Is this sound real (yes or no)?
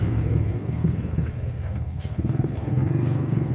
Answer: no